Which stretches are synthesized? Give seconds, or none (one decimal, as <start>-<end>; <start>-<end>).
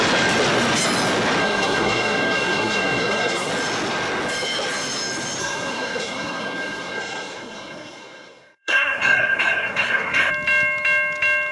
1.4-3.5; 5.4-10.3